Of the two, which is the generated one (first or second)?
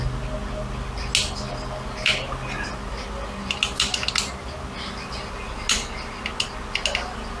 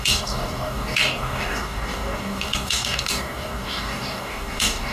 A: second